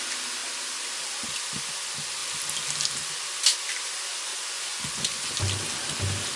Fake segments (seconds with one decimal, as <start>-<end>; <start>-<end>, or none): 4.3-5.3